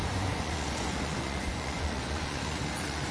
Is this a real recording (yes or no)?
no